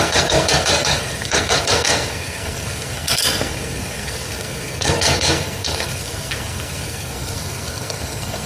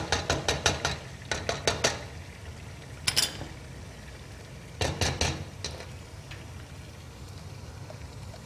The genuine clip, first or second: second